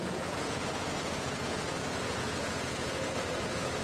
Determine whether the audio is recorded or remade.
remade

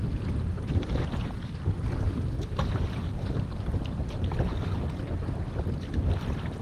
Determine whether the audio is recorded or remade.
recorded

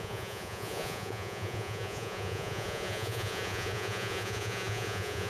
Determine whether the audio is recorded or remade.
remade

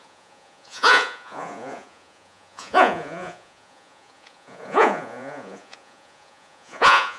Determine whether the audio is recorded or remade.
remade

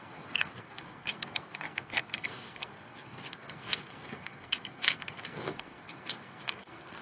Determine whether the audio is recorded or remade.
remade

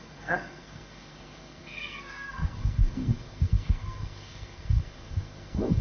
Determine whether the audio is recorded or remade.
remade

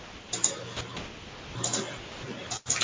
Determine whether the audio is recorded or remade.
recorded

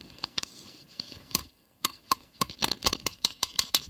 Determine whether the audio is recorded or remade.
remade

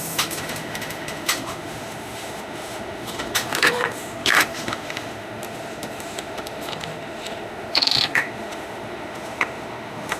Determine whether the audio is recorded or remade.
remade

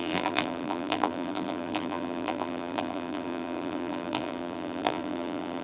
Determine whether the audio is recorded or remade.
remade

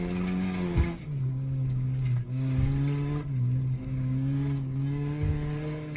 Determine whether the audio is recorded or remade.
remade